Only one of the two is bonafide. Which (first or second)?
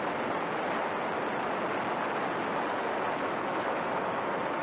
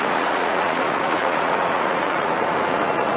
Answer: first